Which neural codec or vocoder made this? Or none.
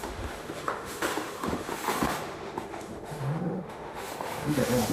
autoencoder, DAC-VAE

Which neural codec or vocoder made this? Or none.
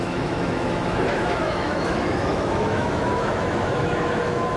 autoencoder, DAC-VAE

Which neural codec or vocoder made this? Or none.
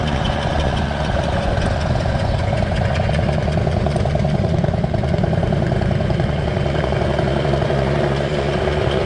vocoder, Vocos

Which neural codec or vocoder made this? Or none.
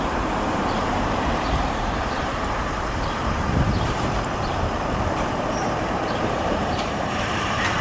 vocoder, BigVGAN v2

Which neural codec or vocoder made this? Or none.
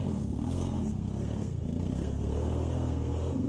codec, SNAC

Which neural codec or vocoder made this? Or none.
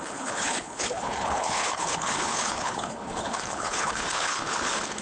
codec, HILCodec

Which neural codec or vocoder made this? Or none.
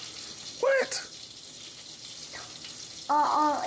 none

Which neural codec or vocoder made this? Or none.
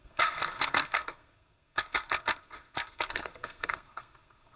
codec, SNAC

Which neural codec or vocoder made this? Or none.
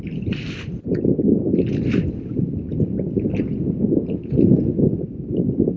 none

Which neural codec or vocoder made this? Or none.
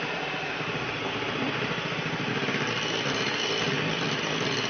none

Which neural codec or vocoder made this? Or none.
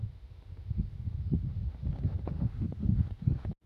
autoencoder, DAC-VAE